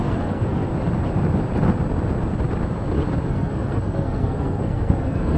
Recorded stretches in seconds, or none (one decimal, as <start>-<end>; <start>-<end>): 0.7-3.3